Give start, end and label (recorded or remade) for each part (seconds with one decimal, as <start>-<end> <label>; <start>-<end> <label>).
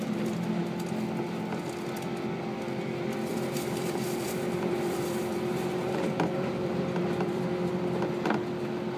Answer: 0.0-3.3 recorded; 3.3-7.7 remade; 7.7-9.0 recorded